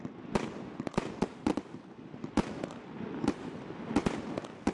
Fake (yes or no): no